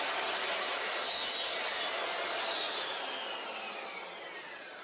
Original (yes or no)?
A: yes